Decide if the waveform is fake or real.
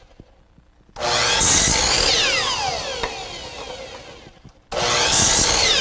real